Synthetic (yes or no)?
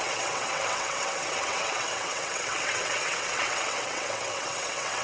yes